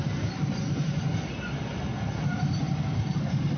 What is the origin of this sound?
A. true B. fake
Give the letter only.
A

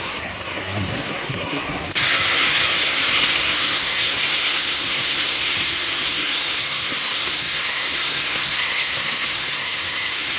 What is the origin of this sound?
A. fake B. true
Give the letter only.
A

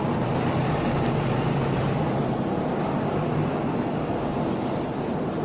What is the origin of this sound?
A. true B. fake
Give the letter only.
A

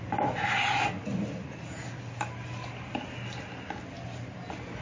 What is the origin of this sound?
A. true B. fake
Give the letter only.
A